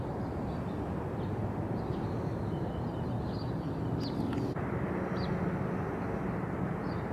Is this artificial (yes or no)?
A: no